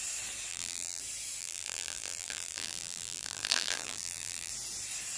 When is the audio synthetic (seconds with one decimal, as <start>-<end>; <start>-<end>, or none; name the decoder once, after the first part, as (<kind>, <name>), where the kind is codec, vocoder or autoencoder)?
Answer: 0.5-1.0 (vocoder, BigVGAN v2); 1.4-4.5